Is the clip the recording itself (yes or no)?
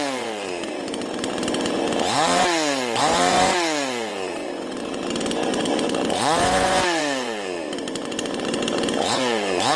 no